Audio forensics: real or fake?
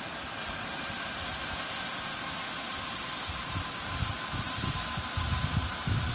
real